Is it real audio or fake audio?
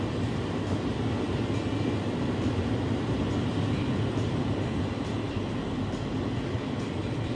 real